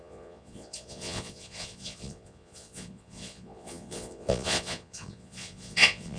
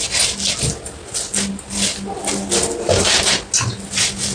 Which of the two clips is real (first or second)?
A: second